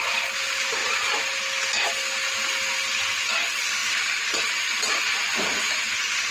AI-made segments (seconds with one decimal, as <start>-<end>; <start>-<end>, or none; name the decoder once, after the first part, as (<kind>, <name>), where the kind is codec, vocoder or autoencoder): 0.8-1.4 (vocoder, BigVGAN v2)